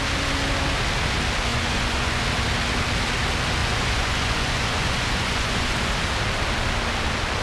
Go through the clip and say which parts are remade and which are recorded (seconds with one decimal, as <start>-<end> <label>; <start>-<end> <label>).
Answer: 0.0-1.5 recorded; 1.5-2.2 remade; 2.2-3.6 recorded; 3.6-5.9 remade; 5.9-7.4 recorded